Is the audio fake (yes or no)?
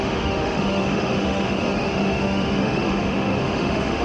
yes